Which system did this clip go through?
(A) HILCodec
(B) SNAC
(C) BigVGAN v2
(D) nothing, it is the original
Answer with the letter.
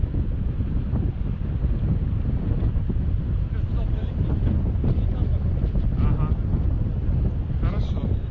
D